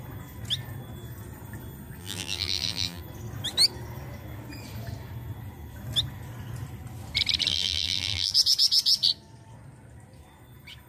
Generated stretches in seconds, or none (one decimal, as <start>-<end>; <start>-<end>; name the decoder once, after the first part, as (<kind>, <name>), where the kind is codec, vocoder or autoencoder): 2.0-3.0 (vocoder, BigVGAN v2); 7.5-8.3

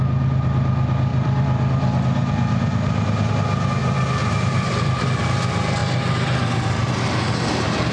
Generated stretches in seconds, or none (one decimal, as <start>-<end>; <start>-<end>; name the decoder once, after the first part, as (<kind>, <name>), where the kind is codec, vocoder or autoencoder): 1.1-3.3 (vocoder, BigVGAN v2); 3.8-5.0; 5.8-6.9

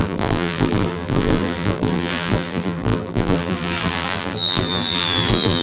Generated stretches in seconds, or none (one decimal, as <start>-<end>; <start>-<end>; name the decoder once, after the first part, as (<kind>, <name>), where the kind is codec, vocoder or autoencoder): 0.0-5.6 (vocoder, BigVGAN v2)

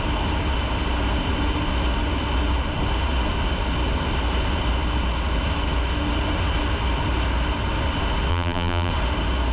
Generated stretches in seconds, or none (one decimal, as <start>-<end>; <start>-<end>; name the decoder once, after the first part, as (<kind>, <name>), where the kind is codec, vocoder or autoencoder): 8.3-8.9 (vocoder, BigVGAN v2)